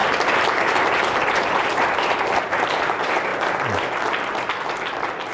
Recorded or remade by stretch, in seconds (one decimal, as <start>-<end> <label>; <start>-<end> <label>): 0.0-1.3 recorded; 1.3-3.3 remade; 3.3-5.3 recorded